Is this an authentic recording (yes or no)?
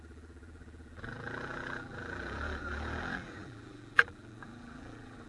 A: no